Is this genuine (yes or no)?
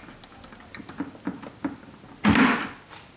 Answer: yes